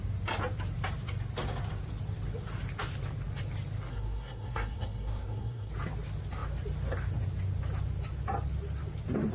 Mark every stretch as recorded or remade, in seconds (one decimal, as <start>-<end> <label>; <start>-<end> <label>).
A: 0.0-3.9 recorded; 3.9-5.7 remade; 5.7-9.3 recorded